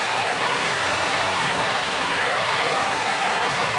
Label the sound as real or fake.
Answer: fake